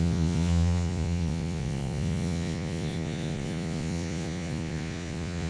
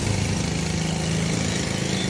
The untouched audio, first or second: second